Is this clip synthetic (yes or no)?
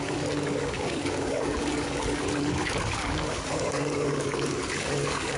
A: yes